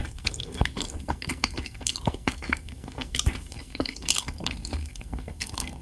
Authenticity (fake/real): fake